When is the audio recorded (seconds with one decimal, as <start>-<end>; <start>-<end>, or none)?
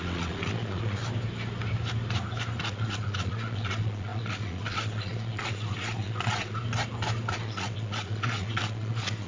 1.0-2.6; 6.6-7.3